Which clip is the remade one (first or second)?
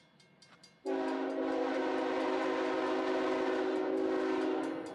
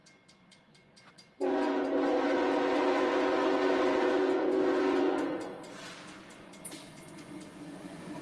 second